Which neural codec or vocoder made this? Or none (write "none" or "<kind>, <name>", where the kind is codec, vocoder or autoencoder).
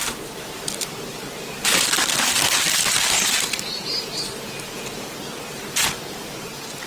none